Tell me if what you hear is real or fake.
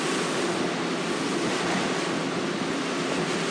real